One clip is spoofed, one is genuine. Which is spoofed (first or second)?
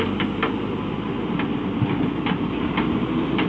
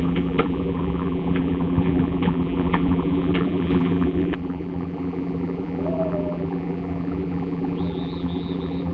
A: second